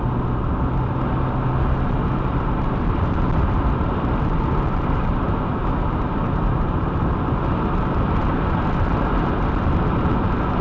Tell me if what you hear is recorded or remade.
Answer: recorded